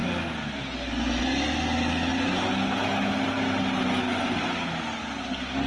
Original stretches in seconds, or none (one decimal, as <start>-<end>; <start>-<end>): 0.0-5.7